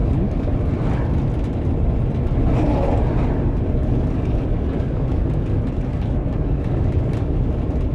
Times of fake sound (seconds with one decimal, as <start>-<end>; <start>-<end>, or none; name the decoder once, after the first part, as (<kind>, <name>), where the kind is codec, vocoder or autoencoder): 0.0-0.5 (codec, DAC); 3.8-7.5